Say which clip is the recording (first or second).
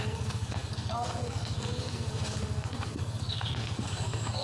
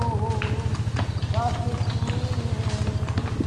second